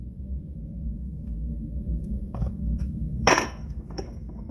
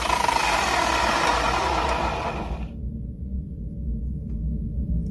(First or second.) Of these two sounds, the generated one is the first